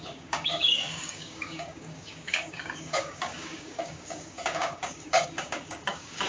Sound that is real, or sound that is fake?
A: fake